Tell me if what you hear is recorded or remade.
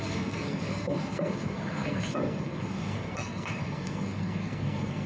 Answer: remade